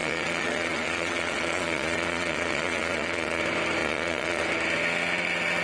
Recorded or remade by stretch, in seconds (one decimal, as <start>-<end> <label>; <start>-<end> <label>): 0.0-3.4 remade; 3.4-3.8 recorded; 3.8-4.4 remade; 4.4-5.6 recorded